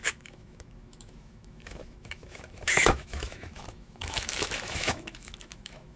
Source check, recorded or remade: remade